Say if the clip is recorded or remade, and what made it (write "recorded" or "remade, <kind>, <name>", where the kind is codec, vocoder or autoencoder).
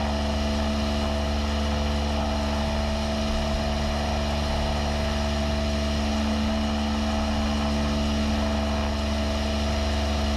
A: recorded